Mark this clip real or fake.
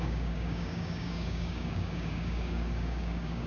fake